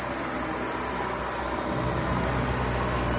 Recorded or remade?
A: recorded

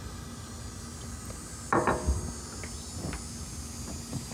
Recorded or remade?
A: recorded